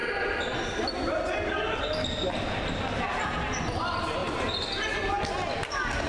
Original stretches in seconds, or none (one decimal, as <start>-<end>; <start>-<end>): 0.0-6.1